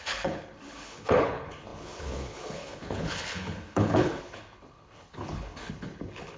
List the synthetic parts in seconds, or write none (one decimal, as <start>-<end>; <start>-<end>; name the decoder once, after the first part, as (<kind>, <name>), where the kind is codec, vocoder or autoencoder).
0.0-6.4 (codec, HILCodec)